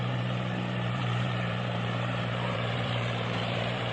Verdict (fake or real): fake